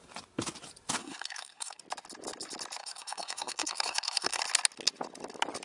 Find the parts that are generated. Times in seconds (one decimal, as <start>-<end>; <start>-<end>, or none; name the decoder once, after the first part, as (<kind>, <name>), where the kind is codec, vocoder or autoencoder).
1.0-1.8 (codec, SNAC); 2.8-4.4